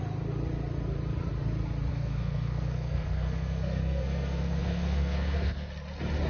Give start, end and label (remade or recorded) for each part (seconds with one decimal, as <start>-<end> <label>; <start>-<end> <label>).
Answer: 0.0-1.9 recorded; 1.9-5.7 remade; 5.7-6.3 recorded